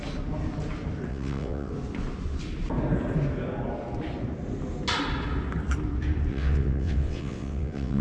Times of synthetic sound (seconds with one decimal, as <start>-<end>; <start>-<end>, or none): 1.1-1.7; 6.3-8.0